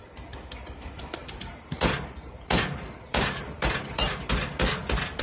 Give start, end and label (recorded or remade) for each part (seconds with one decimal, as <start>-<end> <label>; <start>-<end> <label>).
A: 0.0-1.2 recorded; 1.2-4.3 remade; 4.3-5.2 recorded